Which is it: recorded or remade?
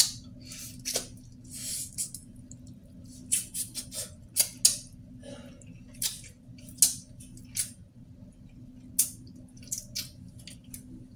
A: recorded